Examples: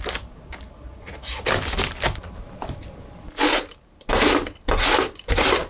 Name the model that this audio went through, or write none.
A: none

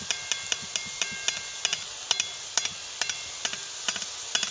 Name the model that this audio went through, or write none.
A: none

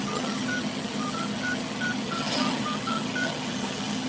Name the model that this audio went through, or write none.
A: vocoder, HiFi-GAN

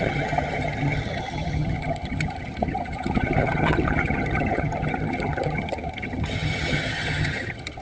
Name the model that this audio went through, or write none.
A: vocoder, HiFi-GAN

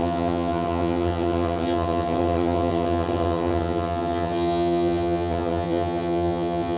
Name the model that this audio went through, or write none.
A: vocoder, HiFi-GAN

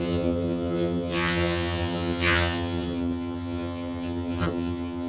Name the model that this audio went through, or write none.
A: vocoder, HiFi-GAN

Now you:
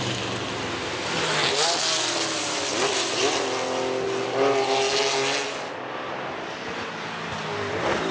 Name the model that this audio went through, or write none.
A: none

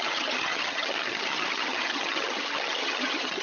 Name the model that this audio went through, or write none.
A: vocoder, HiFi-GAN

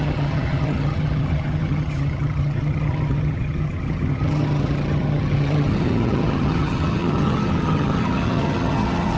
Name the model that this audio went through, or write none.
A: vocoder, HiFi-GAN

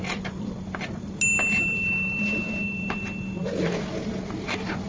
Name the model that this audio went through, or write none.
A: none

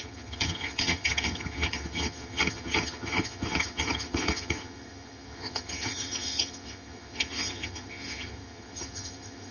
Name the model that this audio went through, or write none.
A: vocoder, HiFi-GAN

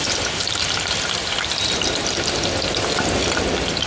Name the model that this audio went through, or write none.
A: none